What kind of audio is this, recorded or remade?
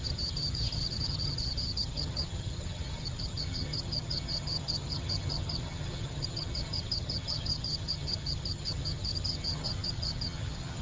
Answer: remade